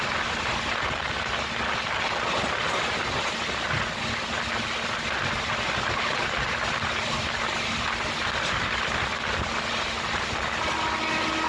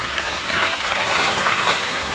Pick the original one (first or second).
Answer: first